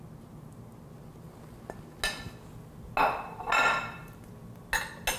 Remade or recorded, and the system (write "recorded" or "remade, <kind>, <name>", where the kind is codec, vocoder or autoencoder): recorded